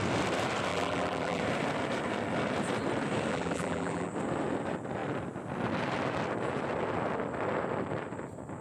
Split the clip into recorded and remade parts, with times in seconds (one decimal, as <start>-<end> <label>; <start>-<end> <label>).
0.0-0.7 recorded; 0.7-1.4 remade; 1.4-3.3 recorded; 3.3-4.1 remade; 4.1-8.6 recorded